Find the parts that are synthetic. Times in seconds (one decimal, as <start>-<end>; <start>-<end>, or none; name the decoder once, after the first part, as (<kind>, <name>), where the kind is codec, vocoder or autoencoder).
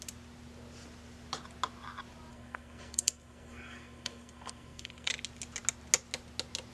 2.3-5.1 (codec, SNAC)